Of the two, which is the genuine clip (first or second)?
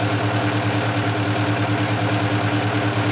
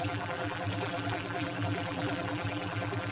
first